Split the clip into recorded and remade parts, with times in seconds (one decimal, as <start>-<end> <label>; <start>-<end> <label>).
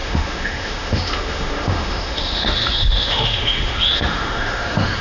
0.0-5.0 remade